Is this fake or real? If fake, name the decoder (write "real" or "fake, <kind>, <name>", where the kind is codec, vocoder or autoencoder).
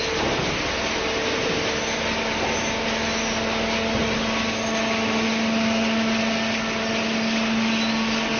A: real